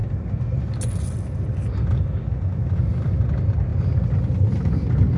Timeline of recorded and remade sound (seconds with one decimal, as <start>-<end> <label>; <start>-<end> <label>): 0.0-5.2 recorded